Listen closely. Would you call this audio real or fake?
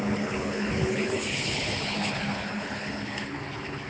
fake